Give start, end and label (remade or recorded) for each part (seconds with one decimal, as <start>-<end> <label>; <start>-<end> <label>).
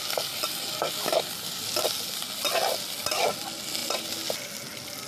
0.0-5.1 recorded